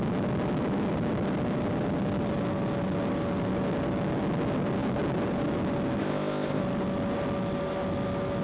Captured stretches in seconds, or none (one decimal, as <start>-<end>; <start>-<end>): 0.0-6.0; 6.6-8.4